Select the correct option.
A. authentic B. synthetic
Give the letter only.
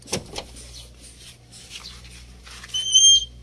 A